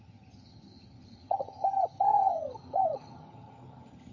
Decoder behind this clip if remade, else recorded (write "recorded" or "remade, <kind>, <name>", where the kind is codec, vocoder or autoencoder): remade, vocoder, HiFi-GAN